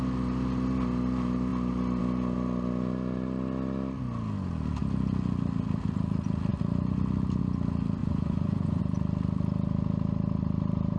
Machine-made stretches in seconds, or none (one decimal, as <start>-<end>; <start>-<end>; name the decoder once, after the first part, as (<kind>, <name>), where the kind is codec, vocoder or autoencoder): 8.0-8.8 (vocoder, Vocos)